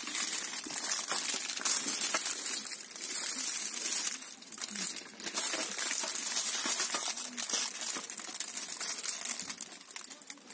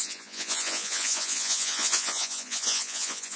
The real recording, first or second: first